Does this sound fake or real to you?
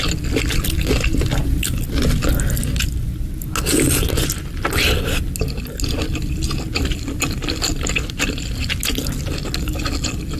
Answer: real